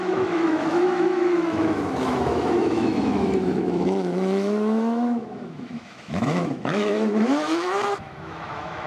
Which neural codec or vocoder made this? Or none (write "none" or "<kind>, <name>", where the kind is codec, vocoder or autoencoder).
autoencoder, DAC-VAE